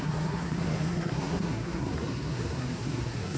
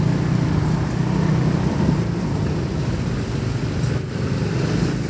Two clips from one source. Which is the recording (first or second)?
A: second